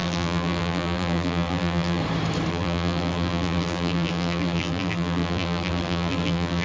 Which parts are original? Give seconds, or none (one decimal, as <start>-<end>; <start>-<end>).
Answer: 2.0-2.5